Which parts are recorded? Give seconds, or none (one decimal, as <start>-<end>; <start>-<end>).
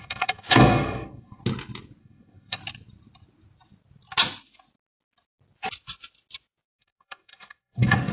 1.4-2.0; 2.6-6.8